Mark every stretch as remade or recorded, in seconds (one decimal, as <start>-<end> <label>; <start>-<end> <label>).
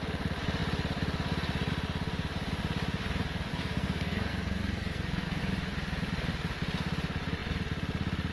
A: 0.0-3.5 recorded; 3.5-5.4 remade; 5.4-8.3 recorded